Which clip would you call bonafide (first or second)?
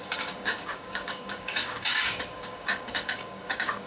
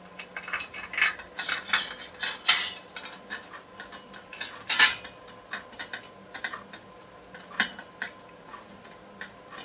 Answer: second